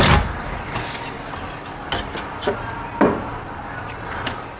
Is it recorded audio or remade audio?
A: recorded